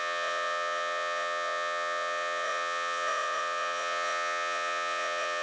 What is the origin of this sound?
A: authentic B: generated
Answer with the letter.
B